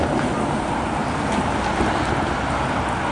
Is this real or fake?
real